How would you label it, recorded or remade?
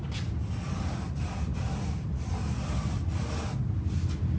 recorded